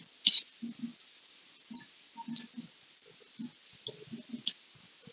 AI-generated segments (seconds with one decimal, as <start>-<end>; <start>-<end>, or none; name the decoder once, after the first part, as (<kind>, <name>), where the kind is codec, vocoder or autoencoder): none